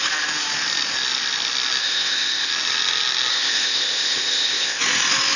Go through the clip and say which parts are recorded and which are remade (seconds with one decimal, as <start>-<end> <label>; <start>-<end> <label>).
0.0-1.8 recorded; 1.8-2.5 remade; 2.5-3.3 recorded; 3.3-4.8 remade; 4.8-5.4 recorded